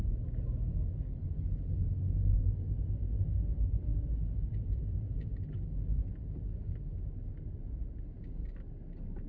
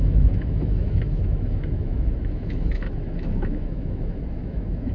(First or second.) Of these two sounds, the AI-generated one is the second